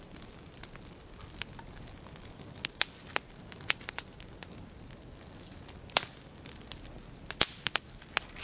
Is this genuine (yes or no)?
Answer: yes